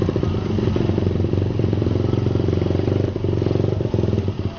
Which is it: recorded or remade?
remade